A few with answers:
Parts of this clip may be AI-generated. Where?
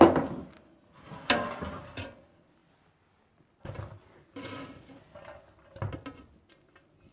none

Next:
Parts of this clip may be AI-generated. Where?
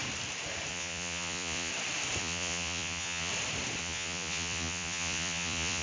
0.7-1.7 (vocoder, Vocos); 2.2-3.3; 3.8-5.8